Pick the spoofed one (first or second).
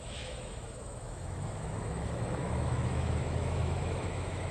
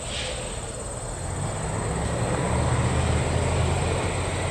first